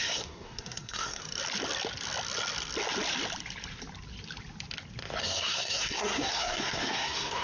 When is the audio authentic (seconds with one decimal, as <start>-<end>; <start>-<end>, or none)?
1.2-5.2